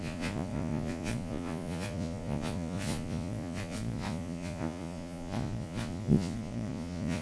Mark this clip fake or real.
fake